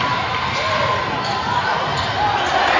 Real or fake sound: real